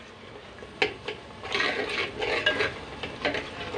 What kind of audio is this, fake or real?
real